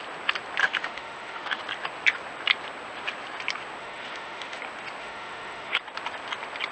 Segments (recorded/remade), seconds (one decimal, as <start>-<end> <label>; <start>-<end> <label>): 0.0-0.6 recorded; 0.6-1.6 remade; 1.6-3.8 recorded; 3.8-4.6 remade; 4.6-5.0 recorded; 5.0-5.8 remade; 5.8-6.7 recorded